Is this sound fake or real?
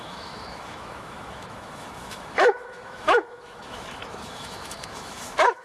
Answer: fake